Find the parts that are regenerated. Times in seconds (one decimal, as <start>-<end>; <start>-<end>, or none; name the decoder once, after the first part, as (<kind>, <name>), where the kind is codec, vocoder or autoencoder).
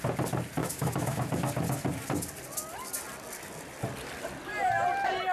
0.6-1.3 (autoencoder, DAC-VAE)